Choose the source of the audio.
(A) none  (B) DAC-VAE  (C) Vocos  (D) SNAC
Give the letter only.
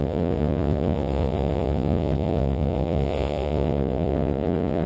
C